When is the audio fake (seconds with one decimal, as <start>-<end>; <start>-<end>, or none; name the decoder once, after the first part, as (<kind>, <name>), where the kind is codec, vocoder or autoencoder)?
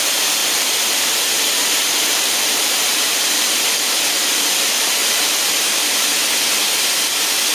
0.4-1.1 (vocoder, BigVGAN v2); 1.6-3.1; 5.0-5.8